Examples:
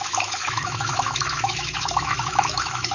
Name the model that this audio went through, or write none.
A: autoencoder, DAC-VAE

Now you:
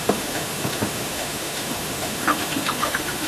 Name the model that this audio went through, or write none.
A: autoencoder, DAC-VAE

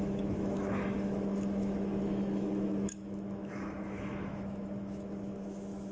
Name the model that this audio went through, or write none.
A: autoencoder, DAC-VAE